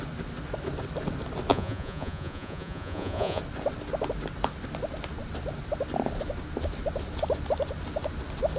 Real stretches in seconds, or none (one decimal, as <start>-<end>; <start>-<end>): 0.0-1.5; 3.4-8.6